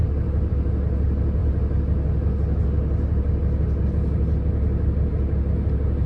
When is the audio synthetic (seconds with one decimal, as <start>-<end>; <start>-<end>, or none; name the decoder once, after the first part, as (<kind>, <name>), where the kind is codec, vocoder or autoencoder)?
0.0-0.5 (vocoder, BigVGAN v2)